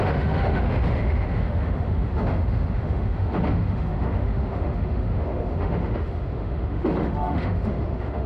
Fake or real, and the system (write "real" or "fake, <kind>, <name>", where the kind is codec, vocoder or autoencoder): fake, autoencoder, DAC-VAE